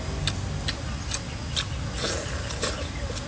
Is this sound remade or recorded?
recorded